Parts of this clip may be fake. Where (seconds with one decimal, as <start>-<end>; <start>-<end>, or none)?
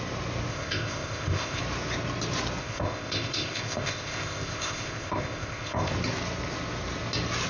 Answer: 0.5-1.6; 2.6-5.9